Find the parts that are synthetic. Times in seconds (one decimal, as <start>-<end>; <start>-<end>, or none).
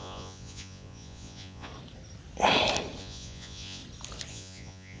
0.0-1.7; 3.0-3.8; 4.3-5.0